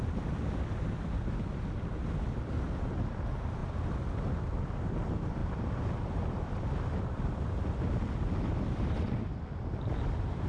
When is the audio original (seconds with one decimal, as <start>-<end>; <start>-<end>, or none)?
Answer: 0.0-10.5